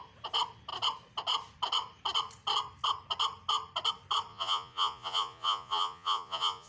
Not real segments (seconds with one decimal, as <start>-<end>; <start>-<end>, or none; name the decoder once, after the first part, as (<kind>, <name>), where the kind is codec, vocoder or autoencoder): 4.3-6.7 (vocoder, Vocos)